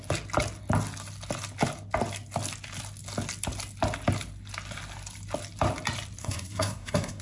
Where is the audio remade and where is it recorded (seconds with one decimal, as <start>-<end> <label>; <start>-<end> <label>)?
0.0-6.2 recorded; 6.2-7.2 remade

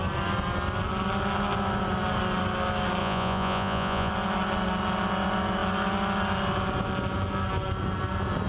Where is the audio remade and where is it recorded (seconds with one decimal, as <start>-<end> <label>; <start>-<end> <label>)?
0.0-3.0 recorded; 3.0-4.1 remade; 4.1-8.5 recorded

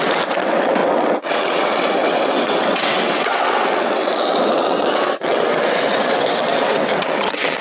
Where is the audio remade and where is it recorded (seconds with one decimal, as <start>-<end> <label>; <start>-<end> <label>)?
0.0-7.6 remade

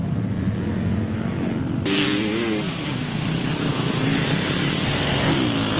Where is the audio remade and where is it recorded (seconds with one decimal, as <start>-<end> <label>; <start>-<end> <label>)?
0.0-5.8 recorded

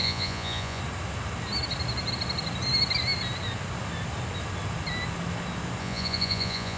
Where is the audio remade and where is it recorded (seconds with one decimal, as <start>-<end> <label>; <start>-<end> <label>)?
0.0-0.8 remade; 0.8-5.8 recorded; 5.8-6.8 remade

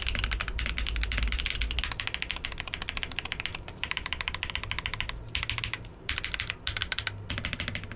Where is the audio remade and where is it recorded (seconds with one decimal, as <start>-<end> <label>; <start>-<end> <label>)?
0.0-3.5 recorded; 3.5-4.3 remade; 4.3-8.0 recorded

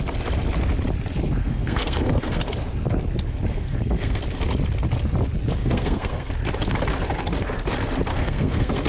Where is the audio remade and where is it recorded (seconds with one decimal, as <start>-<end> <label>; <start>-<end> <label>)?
0.0-1.4 recorded; 1.4-2.4 remade; 2.4-3.5 recorded; 3.5-4.2 remade; 4.2-5.6 recorded; 5.6-6.3 remade; 6.3-8.1 recorded; 8.1-8.9 remade

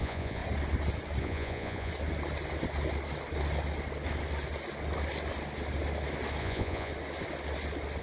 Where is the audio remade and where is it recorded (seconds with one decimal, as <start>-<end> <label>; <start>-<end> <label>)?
0.0-0.4 remade; 0.4-1.2 recorded; 1.2-1.9 remade; 1.9-6.4 recorded; 6.4-6.9 remade; 6.9-8.0 recorded